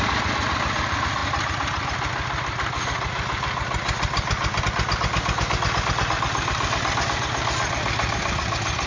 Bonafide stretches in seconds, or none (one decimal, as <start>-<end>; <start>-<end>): 0.0-8.9